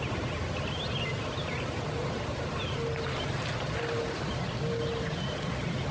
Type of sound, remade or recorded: recorded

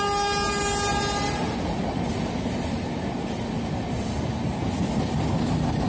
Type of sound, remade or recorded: recorded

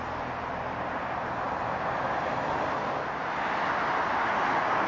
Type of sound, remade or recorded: recorded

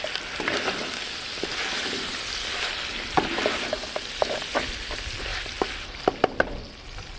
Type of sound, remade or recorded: recorded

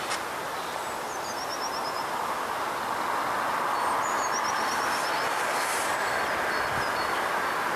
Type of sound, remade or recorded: recorded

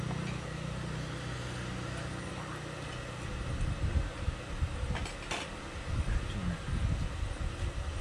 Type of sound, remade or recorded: recorded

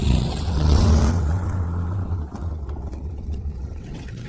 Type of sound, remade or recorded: remade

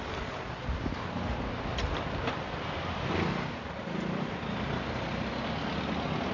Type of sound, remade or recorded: recorded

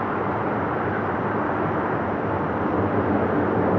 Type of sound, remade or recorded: recorded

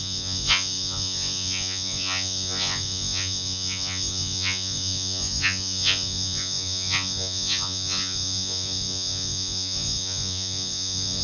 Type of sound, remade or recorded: remade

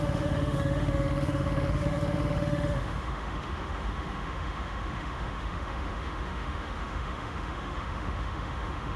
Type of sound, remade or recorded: remade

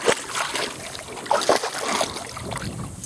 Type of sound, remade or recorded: recorded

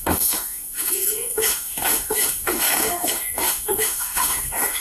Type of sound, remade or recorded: remade